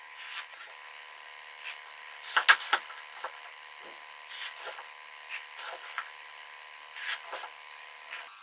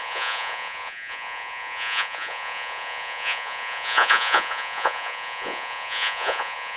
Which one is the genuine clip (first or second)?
first